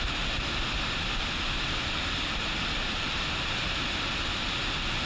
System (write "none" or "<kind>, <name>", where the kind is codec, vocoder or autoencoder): none